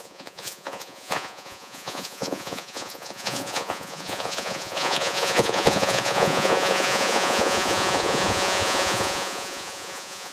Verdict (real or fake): fake